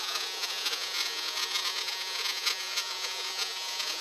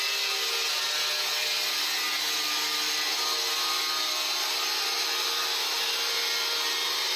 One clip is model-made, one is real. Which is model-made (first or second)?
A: first